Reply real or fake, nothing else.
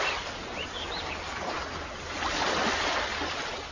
real